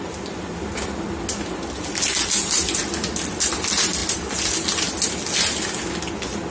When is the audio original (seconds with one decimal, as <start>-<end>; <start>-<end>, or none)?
0.0-6.5